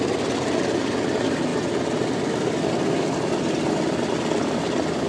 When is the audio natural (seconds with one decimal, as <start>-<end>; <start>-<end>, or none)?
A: 0.0-5.1